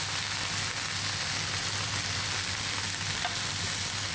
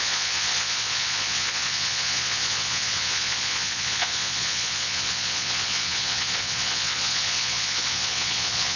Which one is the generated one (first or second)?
second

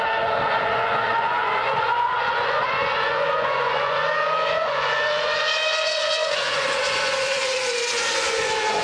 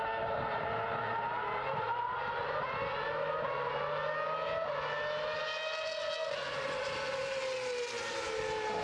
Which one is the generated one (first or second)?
first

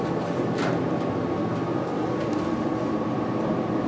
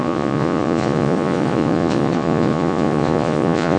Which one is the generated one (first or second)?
second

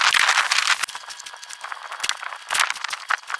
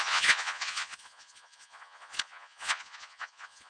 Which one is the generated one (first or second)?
second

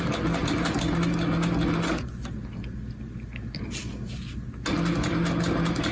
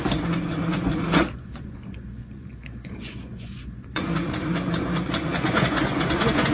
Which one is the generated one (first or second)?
second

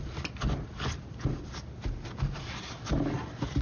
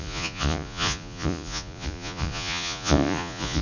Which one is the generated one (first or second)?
second